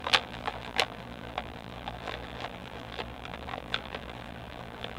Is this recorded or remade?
remade